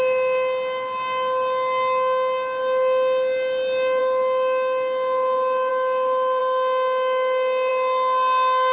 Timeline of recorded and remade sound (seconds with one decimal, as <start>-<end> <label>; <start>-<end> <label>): 0.0-8.7 recorded